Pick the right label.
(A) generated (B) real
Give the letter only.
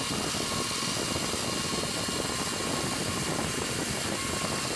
B